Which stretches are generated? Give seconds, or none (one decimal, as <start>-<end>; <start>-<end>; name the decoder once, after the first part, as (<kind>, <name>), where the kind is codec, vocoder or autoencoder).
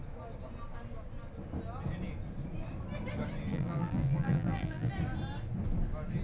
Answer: 3.5-4.9 (vocoder, BigVGAN v2)